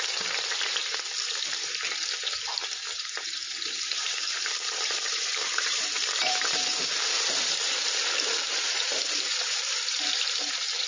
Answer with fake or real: fake